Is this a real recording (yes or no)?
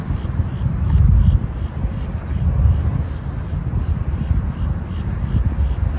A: yes